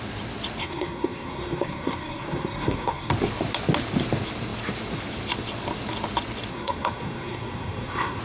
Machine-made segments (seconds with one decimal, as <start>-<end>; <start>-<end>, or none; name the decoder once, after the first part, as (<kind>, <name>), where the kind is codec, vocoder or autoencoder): 0.6-3.1 (codec, SNAC); 6.5-8.2